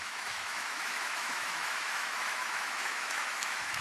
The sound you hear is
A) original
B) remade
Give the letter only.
B